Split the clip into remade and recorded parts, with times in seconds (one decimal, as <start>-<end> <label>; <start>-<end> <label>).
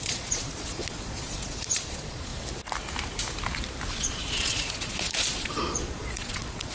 0.0-2.3 remade; 2.3-3.9 recorded; 3.9-6.7 remade